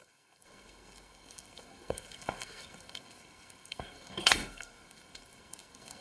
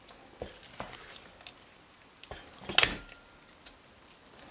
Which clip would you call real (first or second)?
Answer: second